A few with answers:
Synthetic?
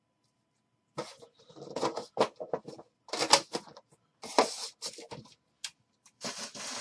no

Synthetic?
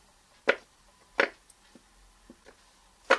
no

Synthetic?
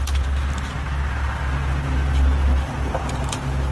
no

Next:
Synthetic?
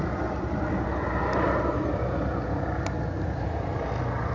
no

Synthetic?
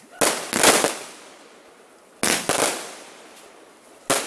no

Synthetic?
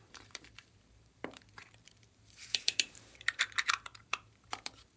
yes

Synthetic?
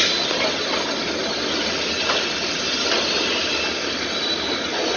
no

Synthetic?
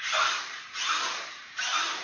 no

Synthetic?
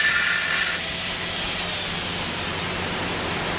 no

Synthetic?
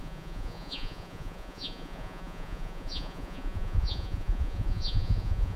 yes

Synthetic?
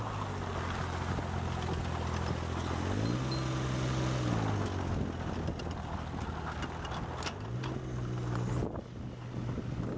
no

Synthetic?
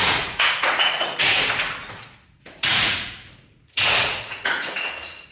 yes